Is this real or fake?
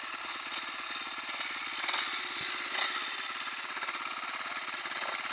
real